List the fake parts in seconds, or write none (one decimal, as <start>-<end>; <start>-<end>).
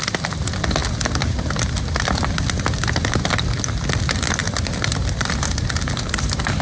none